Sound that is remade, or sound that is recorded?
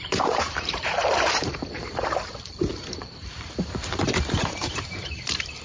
remade